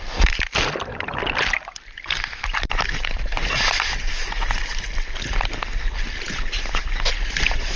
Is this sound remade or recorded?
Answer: remade